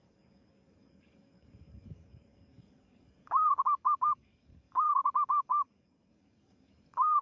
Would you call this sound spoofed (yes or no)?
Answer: yes